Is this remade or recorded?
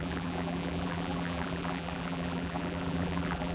remade